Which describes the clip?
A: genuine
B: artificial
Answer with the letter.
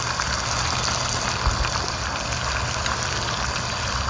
A